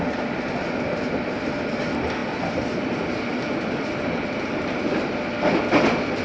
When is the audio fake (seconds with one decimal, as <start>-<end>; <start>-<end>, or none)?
none